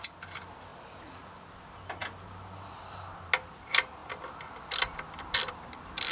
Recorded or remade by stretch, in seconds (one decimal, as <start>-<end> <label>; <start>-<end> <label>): 0.0-6.1 recorded